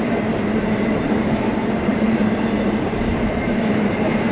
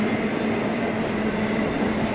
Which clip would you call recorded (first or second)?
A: second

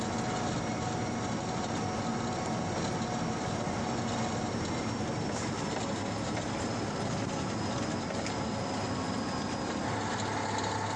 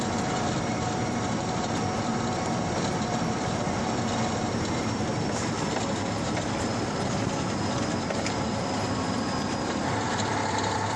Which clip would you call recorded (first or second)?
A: first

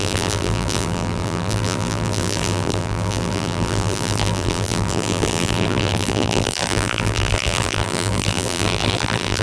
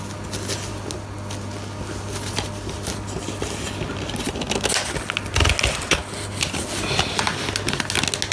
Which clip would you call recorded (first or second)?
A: second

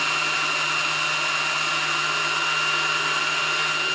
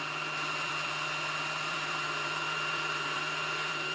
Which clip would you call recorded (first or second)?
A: first